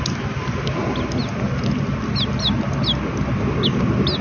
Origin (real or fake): real